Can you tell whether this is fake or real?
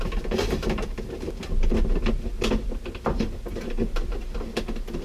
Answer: real